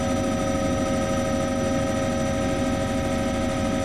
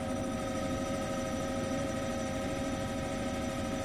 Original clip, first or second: first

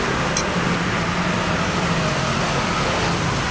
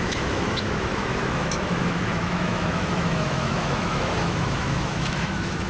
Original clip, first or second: first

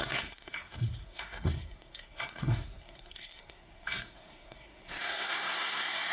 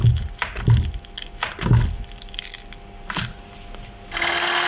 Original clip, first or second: second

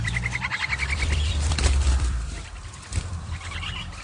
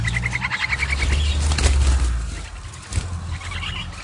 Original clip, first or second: second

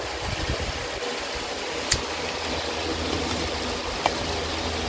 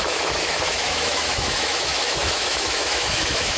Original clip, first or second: first